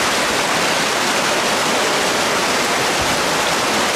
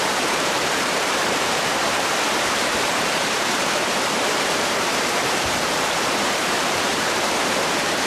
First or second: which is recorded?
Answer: first